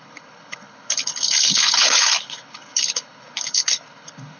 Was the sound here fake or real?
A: fake